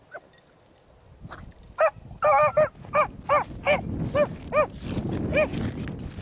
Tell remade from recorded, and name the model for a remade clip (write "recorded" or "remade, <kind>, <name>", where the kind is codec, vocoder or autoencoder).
recorded